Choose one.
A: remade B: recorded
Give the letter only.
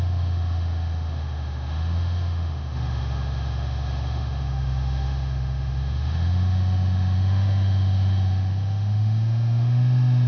A